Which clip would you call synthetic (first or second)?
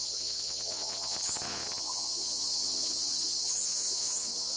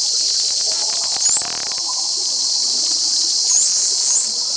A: first